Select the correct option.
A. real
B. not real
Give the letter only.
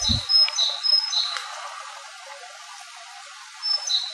A